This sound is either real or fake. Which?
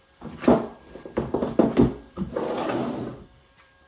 fake